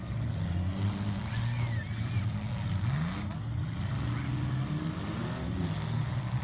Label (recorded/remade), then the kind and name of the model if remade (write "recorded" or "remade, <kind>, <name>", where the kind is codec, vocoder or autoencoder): recorded